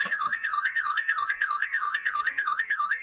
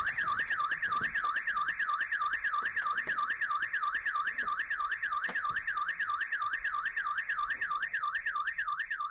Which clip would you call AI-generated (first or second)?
first